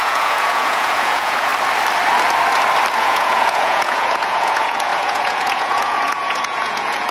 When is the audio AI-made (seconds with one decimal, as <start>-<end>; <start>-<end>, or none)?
0.0-1.5; 3.0-7.1